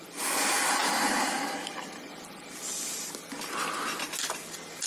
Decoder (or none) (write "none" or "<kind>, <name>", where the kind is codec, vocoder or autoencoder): none